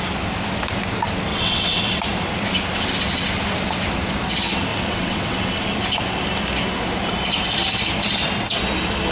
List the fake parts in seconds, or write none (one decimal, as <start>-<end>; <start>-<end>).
1.3-2.0; 4.7-5.7